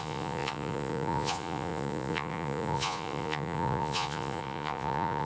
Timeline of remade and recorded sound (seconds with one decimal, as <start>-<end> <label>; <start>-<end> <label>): 0.0-5.3 remade